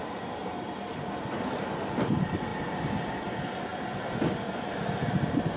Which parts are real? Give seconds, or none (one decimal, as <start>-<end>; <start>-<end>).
0.0-5.6